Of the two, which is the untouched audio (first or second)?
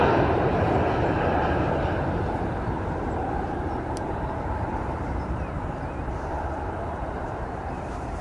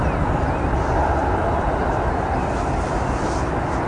second